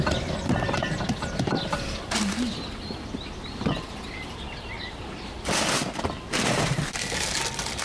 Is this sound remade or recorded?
remade